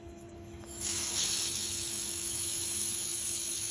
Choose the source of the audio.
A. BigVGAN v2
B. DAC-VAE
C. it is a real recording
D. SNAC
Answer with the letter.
B